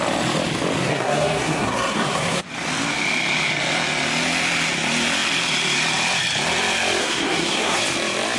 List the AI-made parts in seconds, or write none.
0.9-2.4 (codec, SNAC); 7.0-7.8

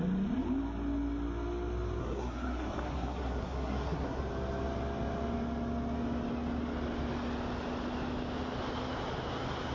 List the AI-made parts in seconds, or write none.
2.0-4.2 (codec, SNAC)

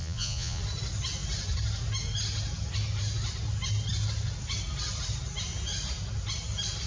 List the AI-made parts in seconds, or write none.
0.0-0.6 (vocoder, Vocos)

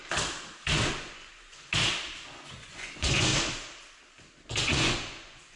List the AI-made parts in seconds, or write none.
0.9-1.7 (vocoder, Vocos); 2.3-3.3; 4.5-5.6

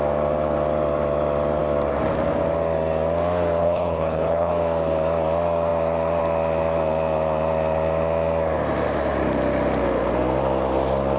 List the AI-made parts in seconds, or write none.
3.6-4.5 (codec, HILCodec)

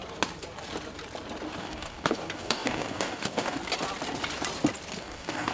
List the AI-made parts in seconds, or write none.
1.6-3.6 (codec, DAC); 5.0-5.5